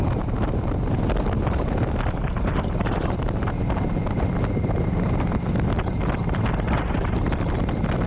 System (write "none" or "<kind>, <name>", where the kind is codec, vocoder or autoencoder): none